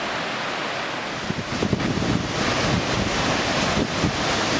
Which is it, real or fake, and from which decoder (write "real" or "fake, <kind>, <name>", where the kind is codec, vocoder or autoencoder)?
real